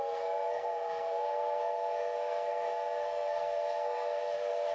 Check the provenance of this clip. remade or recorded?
remade